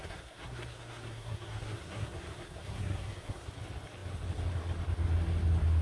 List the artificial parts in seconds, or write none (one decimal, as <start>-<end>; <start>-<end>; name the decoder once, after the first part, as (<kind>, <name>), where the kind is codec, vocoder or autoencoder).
0.0-3.5 (codec, SNAC)